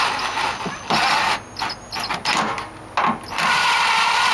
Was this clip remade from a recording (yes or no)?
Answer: no